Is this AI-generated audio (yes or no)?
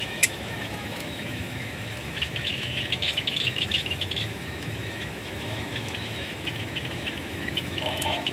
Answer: yes